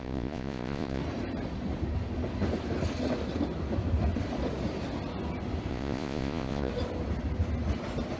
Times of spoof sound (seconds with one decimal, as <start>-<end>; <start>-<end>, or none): 0.0-1.0; 5.7-6.7

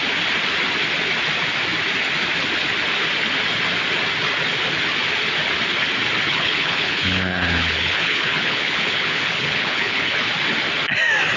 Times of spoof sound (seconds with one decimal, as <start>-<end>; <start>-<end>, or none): 6.3-10.3

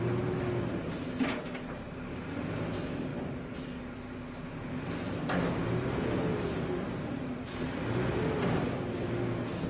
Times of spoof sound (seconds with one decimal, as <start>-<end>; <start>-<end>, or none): none

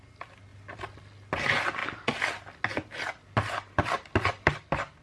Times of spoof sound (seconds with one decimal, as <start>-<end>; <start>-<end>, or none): none

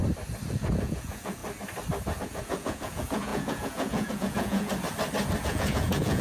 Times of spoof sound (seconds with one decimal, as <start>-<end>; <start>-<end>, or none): 0.5-1.4; 2.2-4.7; 5.4-6.2